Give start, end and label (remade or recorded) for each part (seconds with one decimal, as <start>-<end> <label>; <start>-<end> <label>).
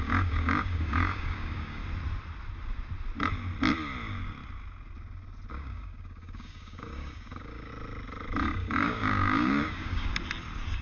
0.0-1.8 remade; 1.8-5.5 recorded; 5.5-7.7 remade; 7.7-8.4 recorded; 8.4-10.1 remade; 10.1-10.8 recorded